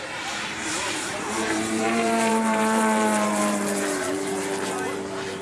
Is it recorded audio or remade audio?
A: remade